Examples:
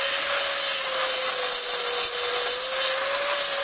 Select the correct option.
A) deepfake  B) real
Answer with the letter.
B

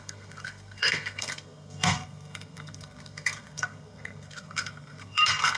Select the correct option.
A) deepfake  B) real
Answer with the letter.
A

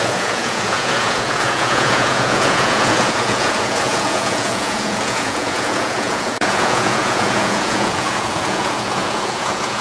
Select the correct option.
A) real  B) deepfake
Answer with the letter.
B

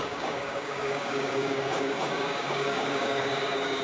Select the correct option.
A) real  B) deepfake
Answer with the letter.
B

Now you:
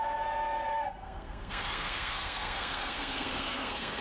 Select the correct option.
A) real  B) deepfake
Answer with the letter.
B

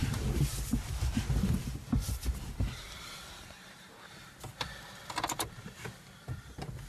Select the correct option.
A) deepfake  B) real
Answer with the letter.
A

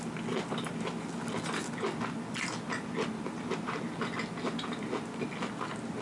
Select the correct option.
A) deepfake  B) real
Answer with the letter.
B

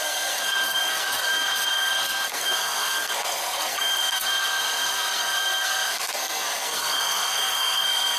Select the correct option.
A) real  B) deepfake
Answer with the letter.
B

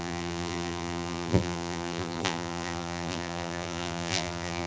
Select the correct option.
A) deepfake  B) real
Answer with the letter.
A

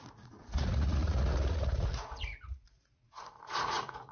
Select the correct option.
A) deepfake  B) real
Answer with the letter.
A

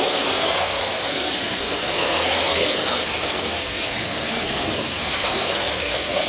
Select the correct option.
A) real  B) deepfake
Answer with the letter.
B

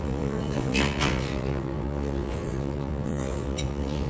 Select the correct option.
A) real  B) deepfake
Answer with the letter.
B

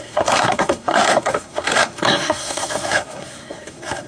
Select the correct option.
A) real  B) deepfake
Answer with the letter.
B